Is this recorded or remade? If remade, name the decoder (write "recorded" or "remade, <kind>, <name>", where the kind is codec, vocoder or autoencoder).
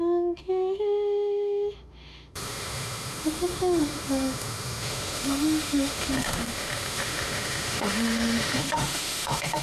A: remade, autoencoder, DAC-VAE